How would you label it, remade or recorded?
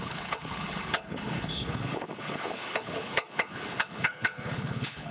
remade